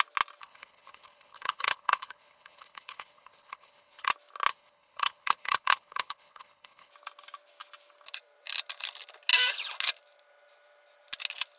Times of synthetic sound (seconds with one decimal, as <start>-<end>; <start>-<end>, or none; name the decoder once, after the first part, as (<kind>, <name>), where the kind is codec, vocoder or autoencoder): 0.4-4.1 (codec, HILCodec); 4.5-6.9